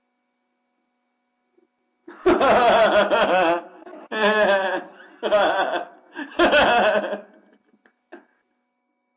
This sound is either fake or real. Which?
real